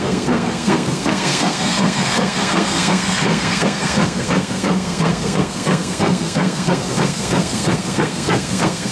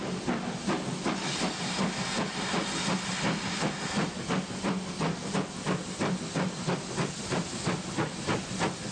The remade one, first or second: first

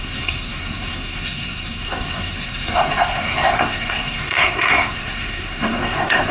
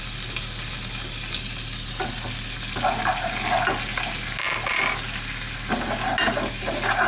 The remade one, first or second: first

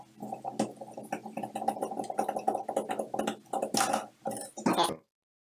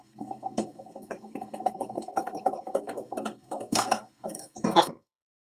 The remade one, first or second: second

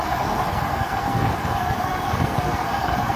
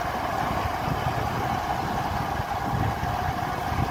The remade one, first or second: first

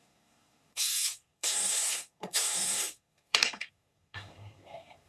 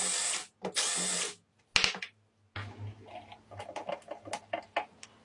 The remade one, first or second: first